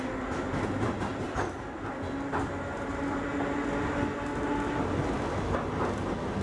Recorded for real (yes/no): yes